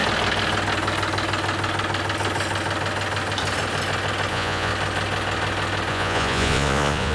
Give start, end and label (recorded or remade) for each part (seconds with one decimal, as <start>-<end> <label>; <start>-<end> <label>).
0.0-4.3 recorded; 4.3-4.7 remade; 4.7-5.9 recorded; 5.9-7.1 remade